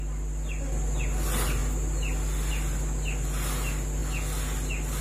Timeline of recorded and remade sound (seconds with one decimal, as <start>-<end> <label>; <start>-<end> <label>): 0.0-5.0 recorded